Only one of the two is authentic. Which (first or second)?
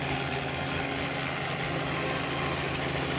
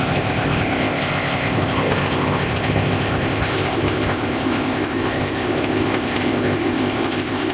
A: first